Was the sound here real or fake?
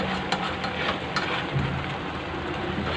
real